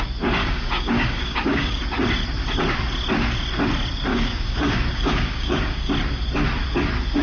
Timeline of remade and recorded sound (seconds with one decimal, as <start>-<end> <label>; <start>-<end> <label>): 0.0-0.4 recorded; 0.4-1.8 remade; 1.8-4.1 recorded; 4.1-5.9 remade; 5.9-7.2 recorded